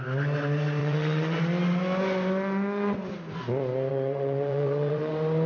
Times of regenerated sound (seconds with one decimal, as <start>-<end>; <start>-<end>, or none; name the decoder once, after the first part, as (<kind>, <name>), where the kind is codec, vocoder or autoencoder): 0.8-1.4 (vocoder, WaveNeXt); 3.9-5.1